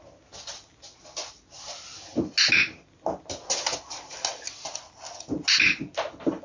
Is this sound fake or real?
real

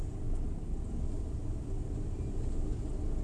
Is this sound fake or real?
real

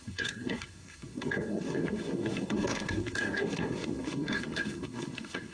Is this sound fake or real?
fake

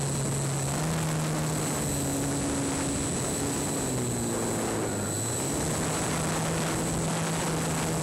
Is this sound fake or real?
real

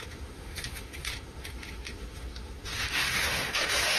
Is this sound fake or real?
fake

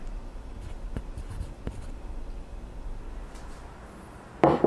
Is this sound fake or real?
real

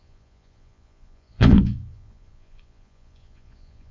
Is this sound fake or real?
fake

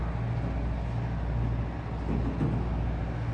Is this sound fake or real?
real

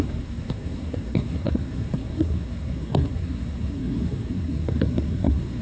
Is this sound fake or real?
fake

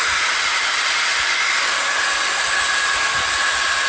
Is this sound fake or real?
real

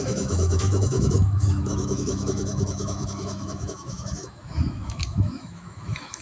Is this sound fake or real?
fake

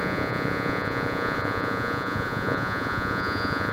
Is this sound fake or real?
fake